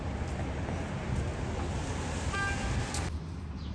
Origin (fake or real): real